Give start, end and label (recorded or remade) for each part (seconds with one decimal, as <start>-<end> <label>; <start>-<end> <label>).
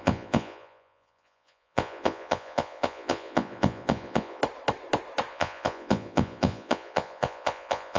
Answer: 0.0-4.4 remade; 4.4-5.3 recorded; 5.3-8.0 remade